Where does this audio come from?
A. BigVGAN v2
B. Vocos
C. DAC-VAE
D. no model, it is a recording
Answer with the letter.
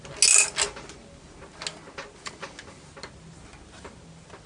D